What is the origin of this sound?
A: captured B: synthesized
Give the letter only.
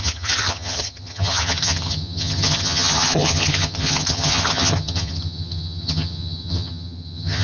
B